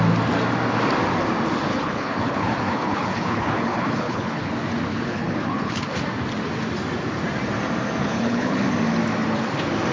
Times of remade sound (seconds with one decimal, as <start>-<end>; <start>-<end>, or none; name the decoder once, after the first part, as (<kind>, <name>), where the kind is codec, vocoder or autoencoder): 1.7-4.5 (codec, HILCodec); 4.9-5.9; 8.0-8.6